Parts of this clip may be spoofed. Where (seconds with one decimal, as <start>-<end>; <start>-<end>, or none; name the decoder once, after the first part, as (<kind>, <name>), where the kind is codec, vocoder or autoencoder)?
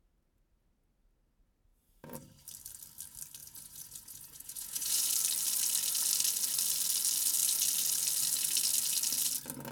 3.4-5.1 (vocoder, Vocos)